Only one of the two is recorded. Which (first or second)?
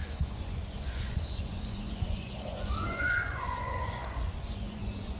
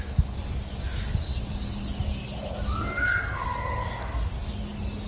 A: second